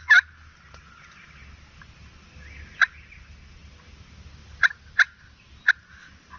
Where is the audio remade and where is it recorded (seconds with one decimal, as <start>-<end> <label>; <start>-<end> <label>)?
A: 0.0-6.4 recorded